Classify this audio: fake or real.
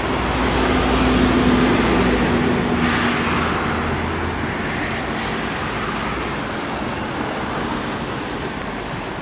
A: real